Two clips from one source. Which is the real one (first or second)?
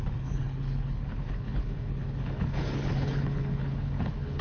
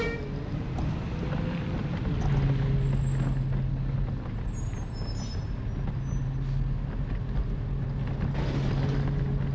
second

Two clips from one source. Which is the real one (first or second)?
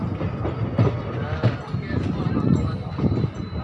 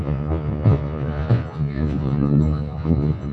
first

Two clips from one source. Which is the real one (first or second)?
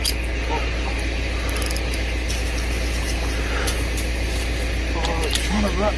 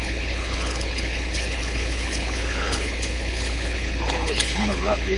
first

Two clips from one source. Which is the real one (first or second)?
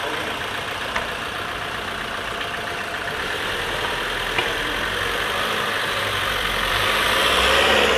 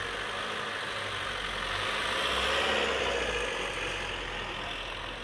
second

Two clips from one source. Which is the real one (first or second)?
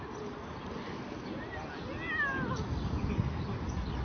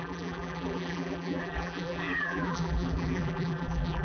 first